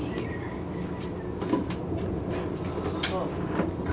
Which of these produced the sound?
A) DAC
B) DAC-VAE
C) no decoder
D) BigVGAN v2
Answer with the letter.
C